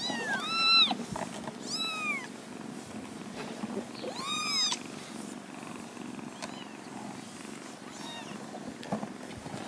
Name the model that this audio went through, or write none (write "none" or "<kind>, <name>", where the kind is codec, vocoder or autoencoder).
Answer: none